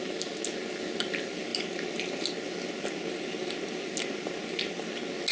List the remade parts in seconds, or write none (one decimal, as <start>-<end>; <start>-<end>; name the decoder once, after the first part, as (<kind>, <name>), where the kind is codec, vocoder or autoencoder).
none